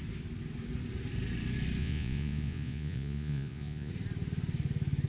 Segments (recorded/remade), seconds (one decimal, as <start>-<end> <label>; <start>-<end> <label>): 0.0-1.8 recorded; 1.8-3.9 remade; 3.9-5.1 recorded